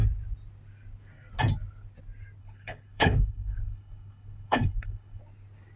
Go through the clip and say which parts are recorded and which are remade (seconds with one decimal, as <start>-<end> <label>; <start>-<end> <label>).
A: 0.0-2.4 recorded; 2.4-5.2 remade; 5.2-5.8 recorded